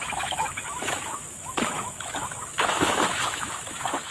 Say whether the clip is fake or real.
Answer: fake